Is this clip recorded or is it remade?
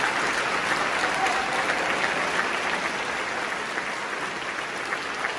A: recorded